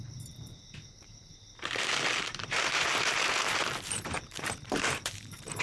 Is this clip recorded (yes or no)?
no